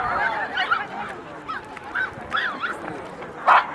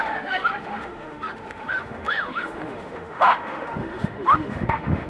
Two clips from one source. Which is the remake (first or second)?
second